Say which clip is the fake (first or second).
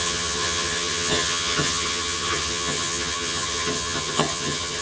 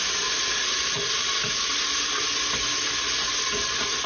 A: first